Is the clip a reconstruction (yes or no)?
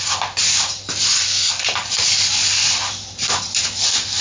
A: no